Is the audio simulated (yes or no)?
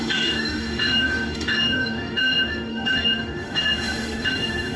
yes